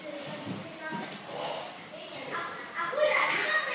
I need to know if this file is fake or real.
real